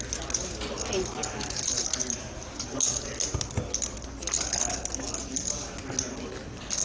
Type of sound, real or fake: real